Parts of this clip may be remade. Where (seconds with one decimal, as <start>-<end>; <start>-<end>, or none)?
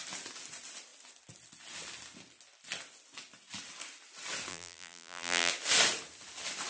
4.5-5.5